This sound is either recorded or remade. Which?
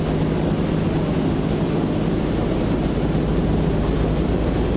recorded